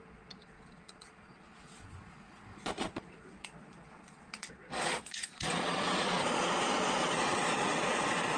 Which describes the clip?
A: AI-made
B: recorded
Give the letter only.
A